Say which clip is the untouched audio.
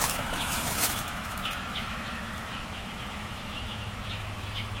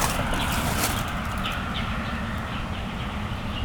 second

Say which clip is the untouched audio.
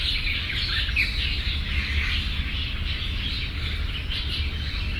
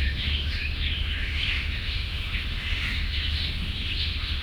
first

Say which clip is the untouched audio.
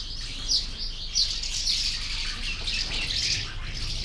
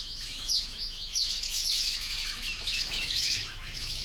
first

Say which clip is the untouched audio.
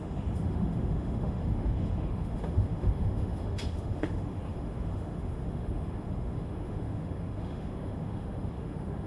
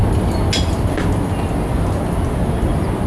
second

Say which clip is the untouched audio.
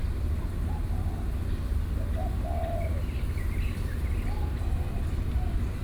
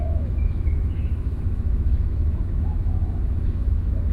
first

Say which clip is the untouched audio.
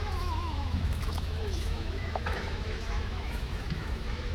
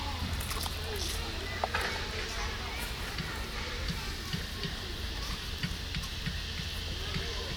second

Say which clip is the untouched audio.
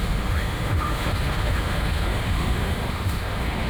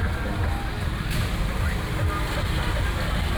second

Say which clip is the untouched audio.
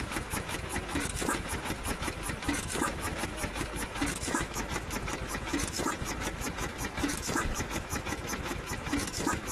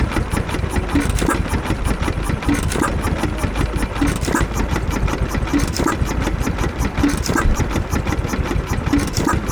second